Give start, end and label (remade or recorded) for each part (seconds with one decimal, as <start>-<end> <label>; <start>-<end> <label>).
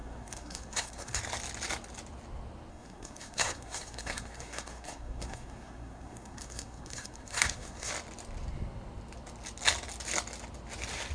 0.0-1.2 remade; 1.2-2.7 recorded; 2.7-7.9 remade; 7.9-11.1 recorded